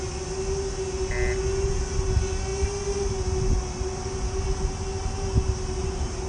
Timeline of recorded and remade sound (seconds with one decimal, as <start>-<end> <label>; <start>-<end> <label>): 0.0-6.3 recorded